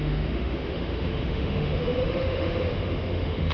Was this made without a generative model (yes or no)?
no